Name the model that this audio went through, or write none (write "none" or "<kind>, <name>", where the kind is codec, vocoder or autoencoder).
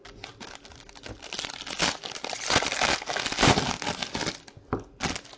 none